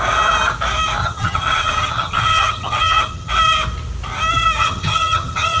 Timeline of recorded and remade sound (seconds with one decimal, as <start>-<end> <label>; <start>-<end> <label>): 0.0-1.0 recorded; 1.0-3.3 remade; 3.3-4.6 recorded; 4.6-5.6 remade

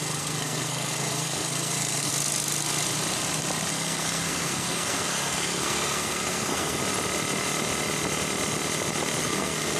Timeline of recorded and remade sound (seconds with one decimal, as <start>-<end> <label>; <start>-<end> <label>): 0.0-2.1 remade; 2.1-3.7 recorded; 3.7-6.8 remade; 6.8-9.2 recorded; 9.2-9.8 remade

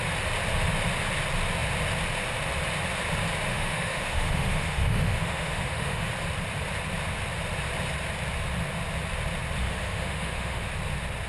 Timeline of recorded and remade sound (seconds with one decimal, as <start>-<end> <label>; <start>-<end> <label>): 0.0-3.5 recorded; 3.5-6.1 remade; 6.1-9.6 recorded; 9.6-10.7 remade; 10.7-11.3 recorded